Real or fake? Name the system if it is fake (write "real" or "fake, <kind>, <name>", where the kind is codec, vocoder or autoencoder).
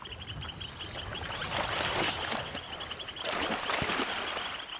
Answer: real